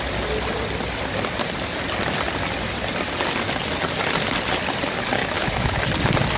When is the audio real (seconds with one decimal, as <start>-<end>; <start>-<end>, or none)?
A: 0.0-5.2; 5.8-6.4